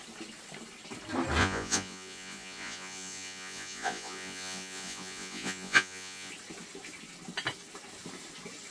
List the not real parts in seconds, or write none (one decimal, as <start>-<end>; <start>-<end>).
1.4-6.3